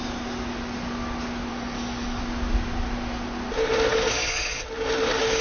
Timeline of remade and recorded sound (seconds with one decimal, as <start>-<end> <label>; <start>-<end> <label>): 0.0-1.5 recorded; 1.5-2.2 remade; 2.2-3.9 recorded; 3.9-4.6 remade; 4.6-5.4 recorded